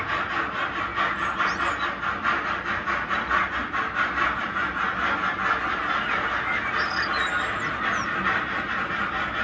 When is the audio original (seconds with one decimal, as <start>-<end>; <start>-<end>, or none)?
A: 0.0-9.4